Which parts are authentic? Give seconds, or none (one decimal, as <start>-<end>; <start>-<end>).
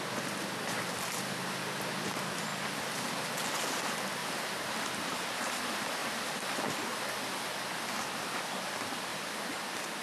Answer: 0.0-4.2; 5.6-9.1